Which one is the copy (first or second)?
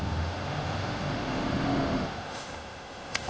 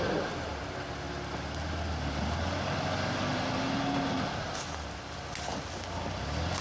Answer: first